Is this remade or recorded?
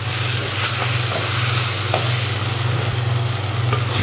recorded